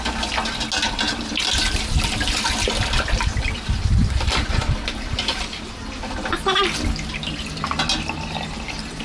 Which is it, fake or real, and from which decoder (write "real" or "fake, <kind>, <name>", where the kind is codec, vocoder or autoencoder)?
real